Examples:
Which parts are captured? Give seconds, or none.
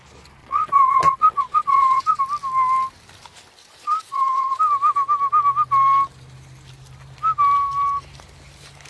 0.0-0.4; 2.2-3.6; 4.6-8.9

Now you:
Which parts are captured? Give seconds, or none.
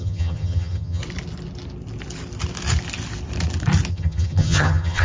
1.0-3.9